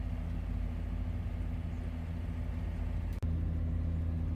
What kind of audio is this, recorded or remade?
recorded